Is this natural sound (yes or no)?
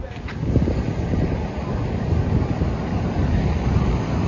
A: yes